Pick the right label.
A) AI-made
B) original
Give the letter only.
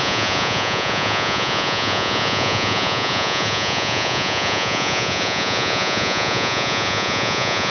A